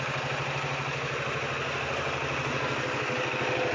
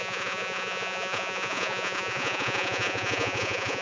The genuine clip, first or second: first